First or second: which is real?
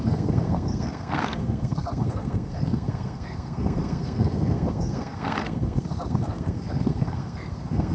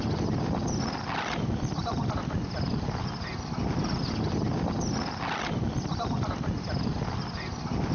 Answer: second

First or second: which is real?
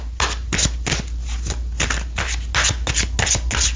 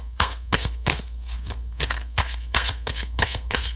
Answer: first